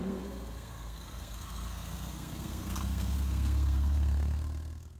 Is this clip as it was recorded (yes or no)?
no